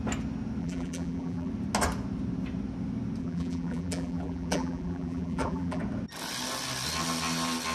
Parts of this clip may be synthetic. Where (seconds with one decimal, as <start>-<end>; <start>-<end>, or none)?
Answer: 0.6-1.5; 3.2-5.8